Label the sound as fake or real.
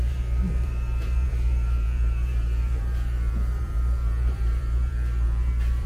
fake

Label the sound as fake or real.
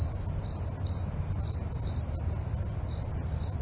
real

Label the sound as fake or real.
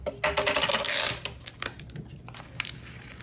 real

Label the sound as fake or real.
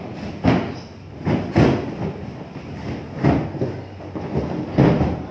real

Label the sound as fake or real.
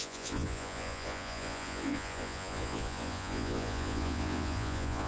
fake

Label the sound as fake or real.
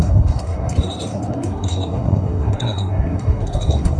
fake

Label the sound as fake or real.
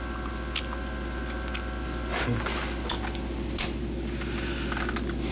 real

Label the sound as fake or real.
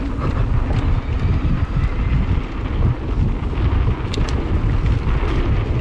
real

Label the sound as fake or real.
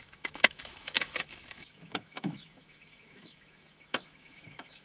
fake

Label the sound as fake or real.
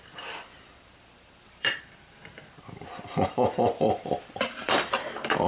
fake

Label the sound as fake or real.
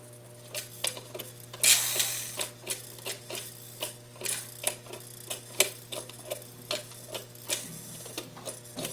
real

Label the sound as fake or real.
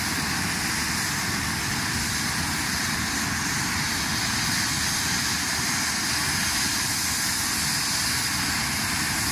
real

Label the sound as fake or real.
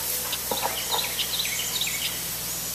real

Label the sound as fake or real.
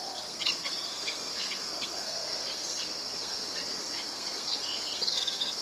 fake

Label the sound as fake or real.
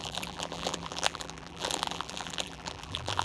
fake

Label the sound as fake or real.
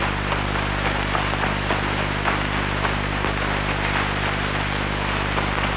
real